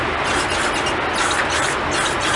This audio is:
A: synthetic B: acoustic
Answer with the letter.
B